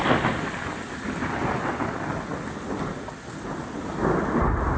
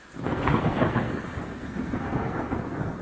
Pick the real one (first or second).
first